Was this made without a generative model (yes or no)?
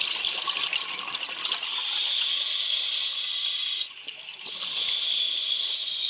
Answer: yes